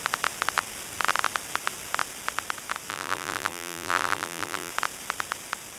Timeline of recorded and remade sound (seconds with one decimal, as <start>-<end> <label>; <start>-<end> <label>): 0.0-2.9 recorded; 2.9-4.7 remade; 4.7-5.8 recorded